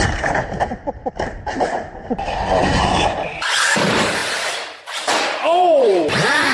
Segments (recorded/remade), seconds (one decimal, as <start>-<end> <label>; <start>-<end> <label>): 0.0-6.5 remade